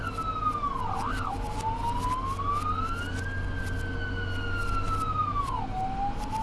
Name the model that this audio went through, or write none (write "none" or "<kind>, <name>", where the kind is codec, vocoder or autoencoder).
none